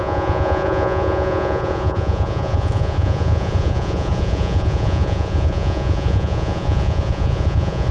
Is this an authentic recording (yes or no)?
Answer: no